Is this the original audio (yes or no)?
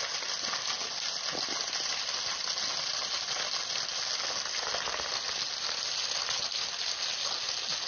yes